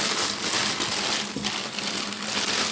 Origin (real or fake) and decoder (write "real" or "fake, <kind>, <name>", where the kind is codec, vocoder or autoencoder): real